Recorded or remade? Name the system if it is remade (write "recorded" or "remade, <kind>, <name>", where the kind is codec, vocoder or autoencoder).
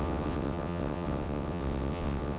remade, vocoder, WaveNeXt